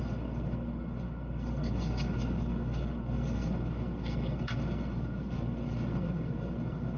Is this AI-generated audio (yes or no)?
yes